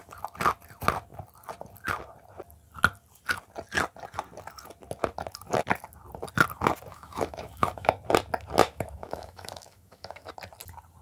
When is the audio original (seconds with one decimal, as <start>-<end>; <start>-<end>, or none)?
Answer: 0.0-6.9; 7.9-8.6; 10.3-11.0